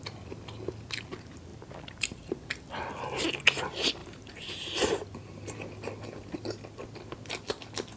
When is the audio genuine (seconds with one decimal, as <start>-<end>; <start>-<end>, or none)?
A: 0.0-1.5; 2.3-4.0; 5.6-8.0